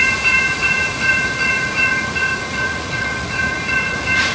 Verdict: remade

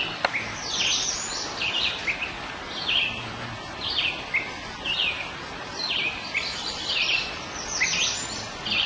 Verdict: recorded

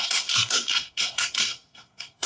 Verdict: remade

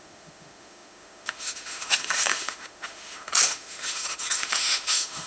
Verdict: remade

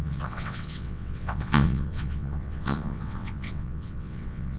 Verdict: remade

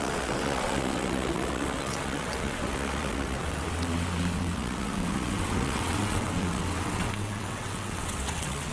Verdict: remade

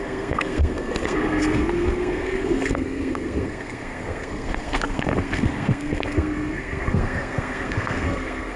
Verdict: remade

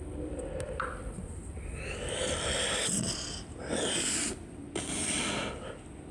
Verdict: recorded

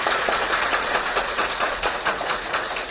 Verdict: remade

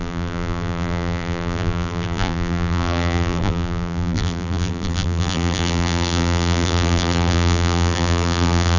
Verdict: remade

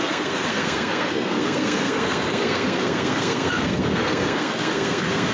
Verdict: remade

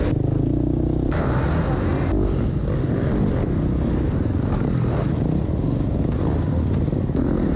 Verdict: recorded